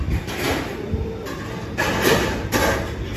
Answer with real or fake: real